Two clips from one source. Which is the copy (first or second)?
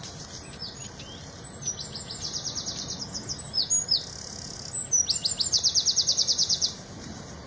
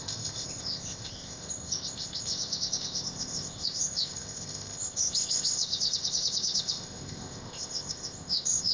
second